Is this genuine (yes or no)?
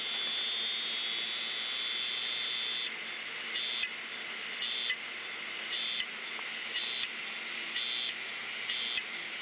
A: yes